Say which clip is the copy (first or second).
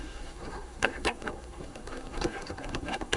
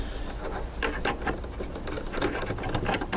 first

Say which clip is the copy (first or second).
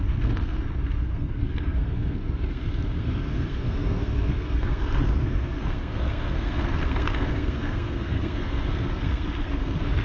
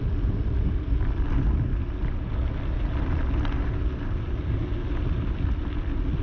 first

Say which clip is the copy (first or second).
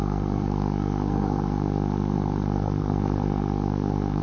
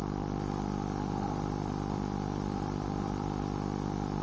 first